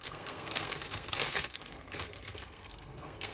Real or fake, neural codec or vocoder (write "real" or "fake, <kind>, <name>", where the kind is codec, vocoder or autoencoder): fake, codec, SNAC